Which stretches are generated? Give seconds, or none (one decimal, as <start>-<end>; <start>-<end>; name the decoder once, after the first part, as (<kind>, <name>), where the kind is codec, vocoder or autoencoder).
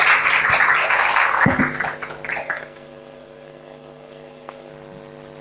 0.8-1.6 (codec, SNAC); 2.4-4.7